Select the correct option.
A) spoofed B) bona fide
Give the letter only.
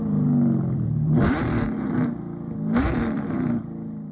A